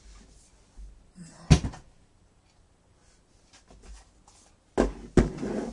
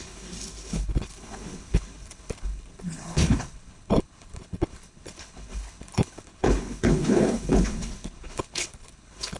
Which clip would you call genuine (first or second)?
first